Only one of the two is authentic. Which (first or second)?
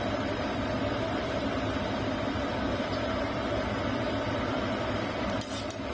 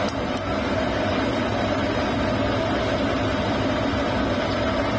second